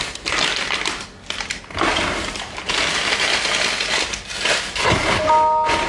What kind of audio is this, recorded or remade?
recorded